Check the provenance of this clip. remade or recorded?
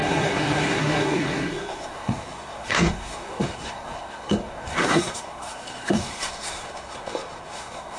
remade